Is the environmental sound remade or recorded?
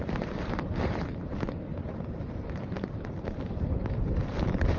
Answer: remade